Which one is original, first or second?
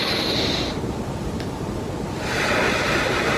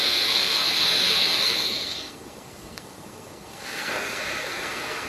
first